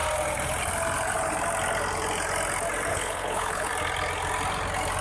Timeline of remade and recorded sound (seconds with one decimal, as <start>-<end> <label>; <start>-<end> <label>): 0.0-2.9 recorded; 2.9-3.7 remade; 3.7-5.0 recorded